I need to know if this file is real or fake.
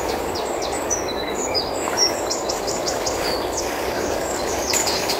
fake